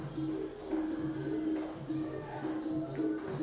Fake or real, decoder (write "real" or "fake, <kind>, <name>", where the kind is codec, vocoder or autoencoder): real